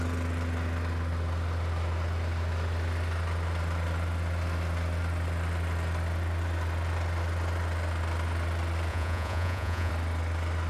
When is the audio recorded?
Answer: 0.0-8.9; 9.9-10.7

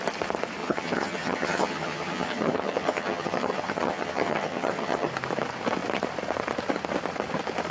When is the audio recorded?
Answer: 0.0-0.6; 5.1-7.7